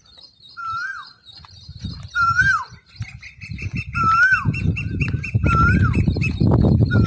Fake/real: real